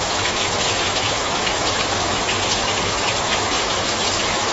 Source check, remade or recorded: remade